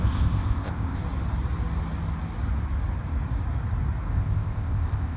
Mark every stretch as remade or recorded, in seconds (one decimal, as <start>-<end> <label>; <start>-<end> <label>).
0.0-1.0 remade; 1.0-4.1 recorded; 4.1-5.2 remade